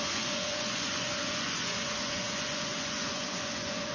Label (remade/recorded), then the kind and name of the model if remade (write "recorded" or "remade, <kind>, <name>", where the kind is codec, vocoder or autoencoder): remade, vocoder, Vocos